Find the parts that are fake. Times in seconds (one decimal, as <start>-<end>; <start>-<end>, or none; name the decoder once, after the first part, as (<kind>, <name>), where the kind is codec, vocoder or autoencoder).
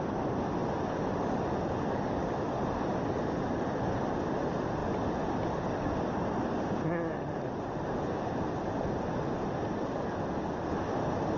none